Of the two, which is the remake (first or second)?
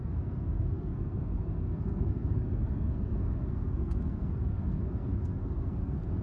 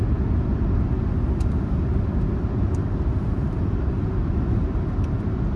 first